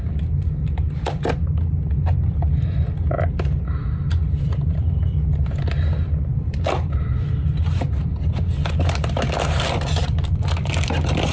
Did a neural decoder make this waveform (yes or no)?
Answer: no